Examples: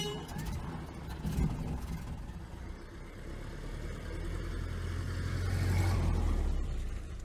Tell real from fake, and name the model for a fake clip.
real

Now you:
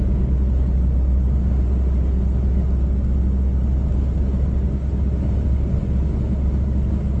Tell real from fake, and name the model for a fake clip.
real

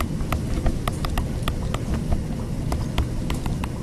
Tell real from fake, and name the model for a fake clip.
real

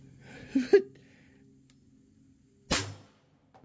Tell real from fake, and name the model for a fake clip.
real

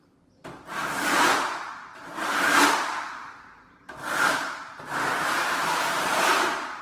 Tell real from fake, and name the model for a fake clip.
fake, vocoder, BigVGAN v2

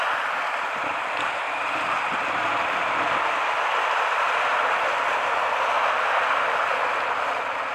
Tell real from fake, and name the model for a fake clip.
real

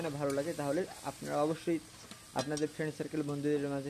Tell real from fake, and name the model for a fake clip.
real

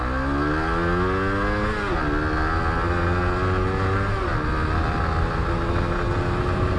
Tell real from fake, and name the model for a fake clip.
real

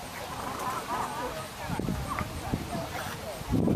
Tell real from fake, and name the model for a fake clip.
real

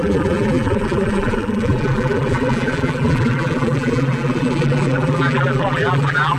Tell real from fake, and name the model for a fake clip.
fake, vocoder, BigVGAN v2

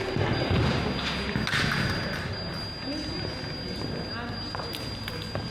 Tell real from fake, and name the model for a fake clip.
real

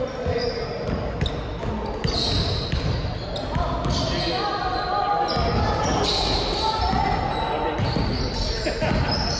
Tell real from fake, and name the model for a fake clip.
real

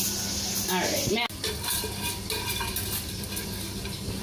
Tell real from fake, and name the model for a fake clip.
real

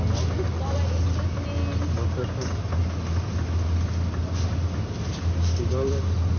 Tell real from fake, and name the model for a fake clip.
real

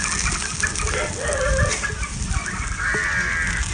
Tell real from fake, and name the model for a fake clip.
real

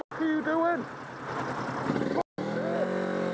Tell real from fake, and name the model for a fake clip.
real